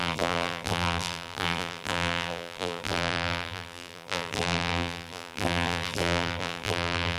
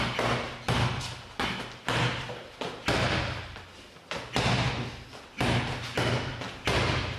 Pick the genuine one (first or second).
second